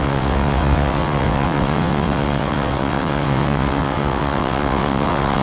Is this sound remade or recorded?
remade